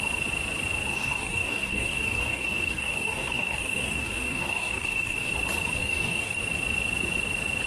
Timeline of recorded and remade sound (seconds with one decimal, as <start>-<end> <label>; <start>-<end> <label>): 0.0-0.9 recorded; 0.9-5.3 remade; 5.3-5.8 recorded; 5.8-6.4 remade; 6.4-7.7 recorded